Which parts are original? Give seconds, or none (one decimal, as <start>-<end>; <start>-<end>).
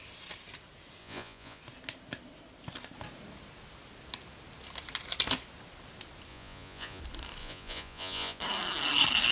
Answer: 0.0-1.0; 1.6-6.3; 7.0-7.4; 8.4-9.3